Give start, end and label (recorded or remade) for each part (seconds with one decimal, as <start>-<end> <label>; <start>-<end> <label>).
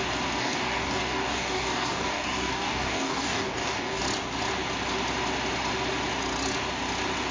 0.0-0.4 recorded; 0.4-4.0 remade; 4.0-7.3 recorded